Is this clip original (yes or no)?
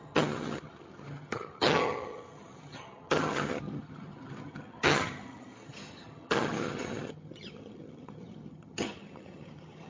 no